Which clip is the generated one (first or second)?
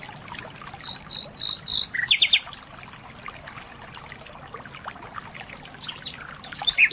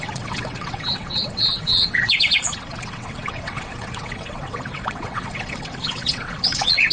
second